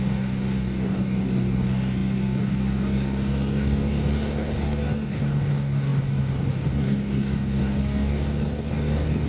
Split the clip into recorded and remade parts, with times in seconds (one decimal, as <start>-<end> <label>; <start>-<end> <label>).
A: 0.0-9.3 remade